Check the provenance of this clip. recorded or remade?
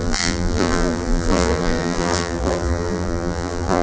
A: remade